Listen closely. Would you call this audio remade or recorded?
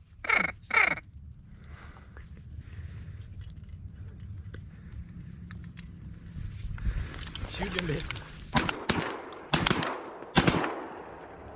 recorded